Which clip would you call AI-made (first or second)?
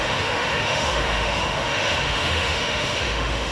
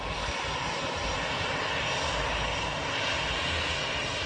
first